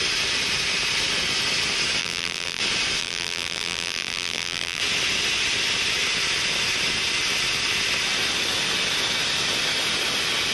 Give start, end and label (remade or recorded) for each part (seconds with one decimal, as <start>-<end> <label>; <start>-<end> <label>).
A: 0.0-2.0 recorded; 2.0-2.6 remade; 2.6-3.0 recorded; 3.0-4.8 remade; 4.8-10.5 recorded